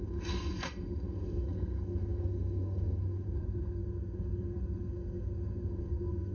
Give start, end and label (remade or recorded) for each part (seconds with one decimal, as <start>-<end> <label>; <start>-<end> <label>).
0.0-6.3 remade